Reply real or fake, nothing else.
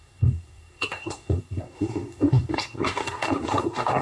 fake